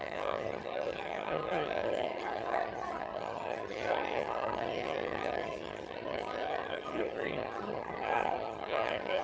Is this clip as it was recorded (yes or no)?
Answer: no